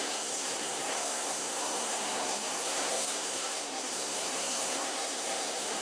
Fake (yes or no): yes